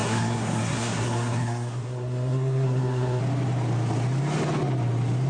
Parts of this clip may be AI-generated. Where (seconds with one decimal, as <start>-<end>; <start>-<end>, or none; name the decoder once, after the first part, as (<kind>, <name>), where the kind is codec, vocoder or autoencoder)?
0.0-3.2 (codec, SNAC)